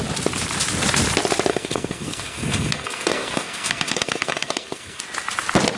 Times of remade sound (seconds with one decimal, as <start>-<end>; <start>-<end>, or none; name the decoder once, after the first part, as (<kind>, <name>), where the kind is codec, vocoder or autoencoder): 1.5-5.0 (codec, SNAC)